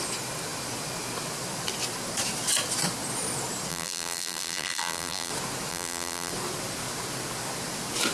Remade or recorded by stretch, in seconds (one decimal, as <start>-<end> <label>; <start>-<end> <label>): 0.0-3.7 recorded; 3.7-5.3 remade; 5.3-5.7 recorded; 5.7-6.3 remade; 6.3-8.1 recorded